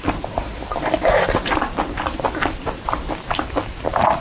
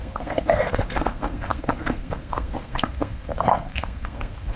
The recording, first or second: first